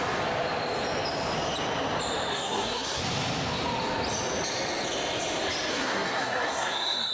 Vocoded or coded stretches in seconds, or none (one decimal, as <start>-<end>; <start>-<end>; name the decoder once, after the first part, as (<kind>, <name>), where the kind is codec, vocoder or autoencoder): 2.3-3.0 (codec, SNAC); 5.7-7.1